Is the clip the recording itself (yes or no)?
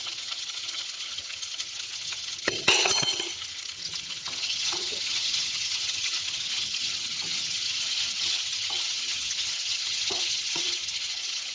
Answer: no